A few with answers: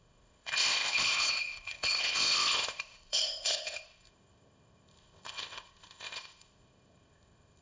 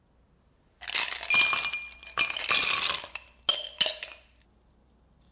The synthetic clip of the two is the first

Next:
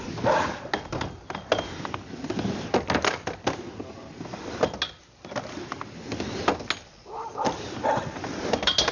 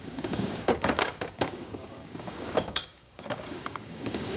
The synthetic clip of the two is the second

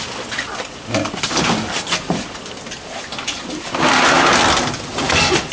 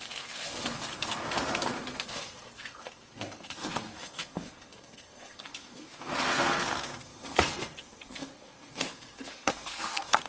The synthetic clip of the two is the second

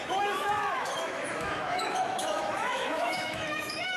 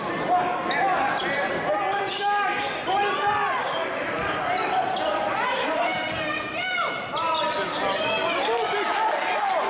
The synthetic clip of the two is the first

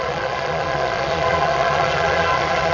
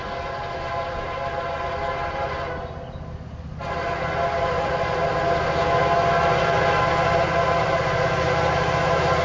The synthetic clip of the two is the first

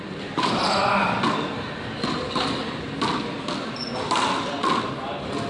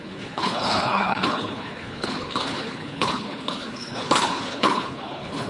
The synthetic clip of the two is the second